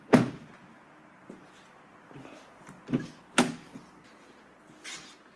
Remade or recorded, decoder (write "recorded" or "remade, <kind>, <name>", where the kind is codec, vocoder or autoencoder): recorded